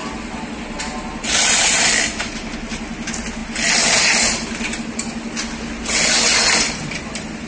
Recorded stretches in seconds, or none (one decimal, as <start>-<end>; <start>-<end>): 0.0-7.5